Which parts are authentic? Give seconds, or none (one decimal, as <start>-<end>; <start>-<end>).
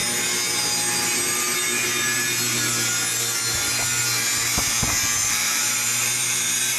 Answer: 0.0-5.2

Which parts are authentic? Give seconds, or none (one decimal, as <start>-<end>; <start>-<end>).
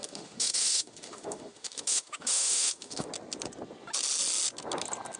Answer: 3.1-5.2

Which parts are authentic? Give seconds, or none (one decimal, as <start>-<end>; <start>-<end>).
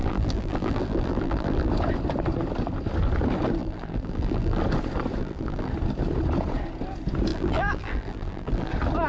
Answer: 1.7-3.6; 4.6-5.2; 5.7-7.3; 8.7-9.1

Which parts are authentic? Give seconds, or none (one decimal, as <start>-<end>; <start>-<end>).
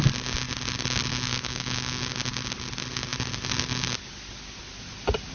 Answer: 0.0-1.3; 2.1-5.3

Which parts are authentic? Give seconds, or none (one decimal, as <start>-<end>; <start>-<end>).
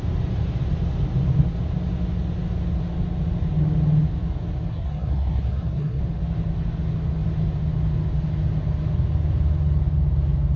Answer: 0.0-4.7; 6.0-10.6